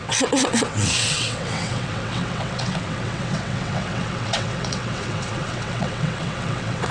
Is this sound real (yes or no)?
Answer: no